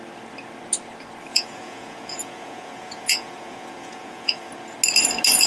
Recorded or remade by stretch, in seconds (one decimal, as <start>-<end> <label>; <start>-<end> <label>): 0.0-1.3 recorded; 1.3-4.5 remade; 4.5-5.5 recorded